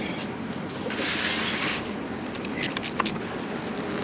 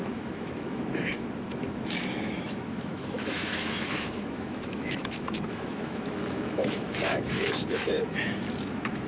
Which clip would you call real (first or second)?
first